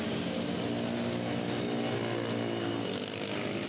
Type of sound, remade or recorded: recorded